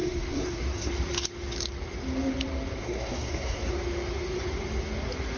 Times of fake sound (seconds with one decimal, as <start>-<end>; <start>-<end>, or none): 0.0-0.9; 2.8-3.7

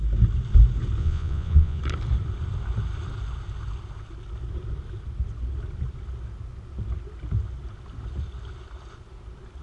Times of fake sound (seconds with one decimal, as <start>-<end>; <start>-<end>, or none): 1.0-1.8

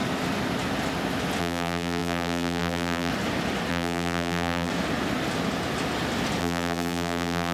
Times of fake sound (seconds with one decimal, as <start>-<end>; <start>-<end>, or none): 1.4-3.1; 3.7-4.7; 6.4-7.5

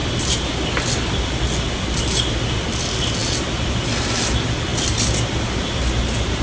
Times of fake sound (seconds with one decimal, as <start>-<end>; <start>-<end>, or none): none

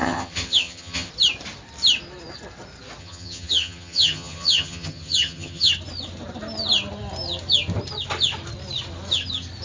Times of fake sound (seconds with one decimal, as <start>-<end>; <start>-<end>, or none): 0.0-1.1; 3.0-5.7

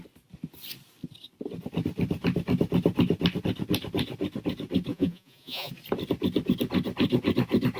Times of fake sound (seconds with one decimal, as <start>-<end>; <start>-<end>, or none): 4.9-5.7

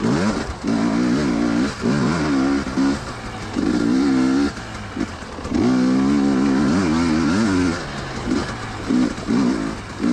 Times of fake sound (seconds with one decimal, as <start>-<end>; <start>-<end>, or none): none

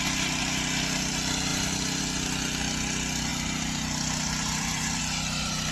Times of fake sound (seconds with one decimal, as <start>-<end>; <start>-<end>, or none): 3.3-5.0